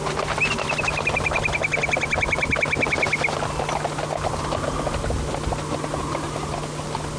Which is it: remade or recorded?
recorded